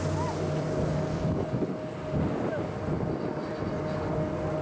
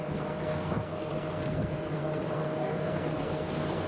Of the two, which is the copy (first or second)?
second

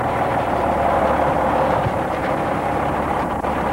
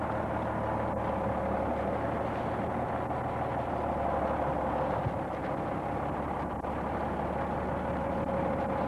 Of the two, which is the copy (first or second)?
first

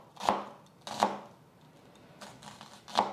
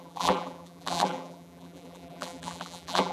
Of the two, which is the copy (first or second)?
second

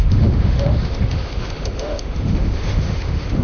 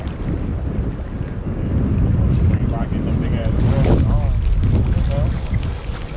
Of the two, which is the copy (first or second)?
first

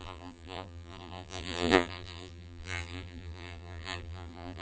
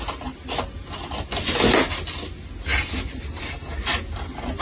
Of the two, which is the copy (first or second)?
first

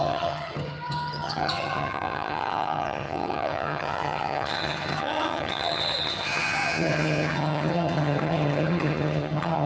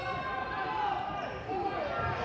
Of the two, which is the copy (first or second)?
first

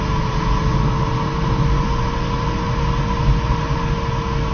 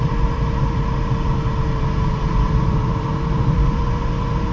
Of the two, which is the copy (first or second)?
second